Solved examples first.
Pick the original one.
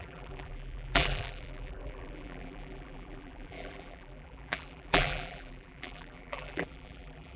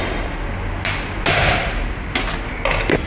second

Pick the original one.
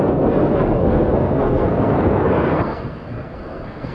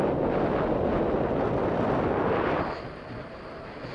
second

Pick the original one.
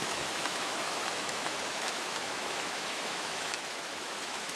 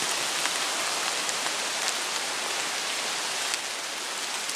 second